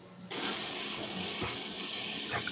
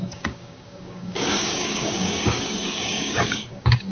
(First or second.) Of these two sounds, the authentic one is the first